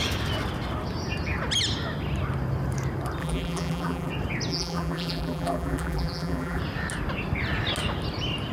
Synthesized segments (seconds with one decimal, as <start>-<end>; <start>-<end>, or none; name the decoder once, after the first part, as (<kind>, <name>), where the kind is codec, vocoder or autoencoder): 3.2-4.1 (vocoder, BigVGAN v2); 4.5-6.6